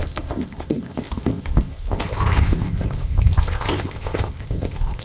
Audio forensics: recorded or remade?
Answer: remade